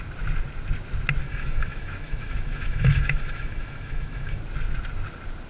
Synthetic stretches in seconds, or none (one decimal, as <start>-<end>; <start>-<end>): 1.2-4.4